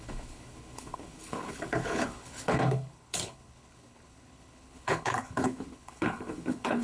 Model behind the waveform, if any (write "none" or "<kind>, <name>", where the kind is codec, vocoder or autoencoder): codec, HILCodec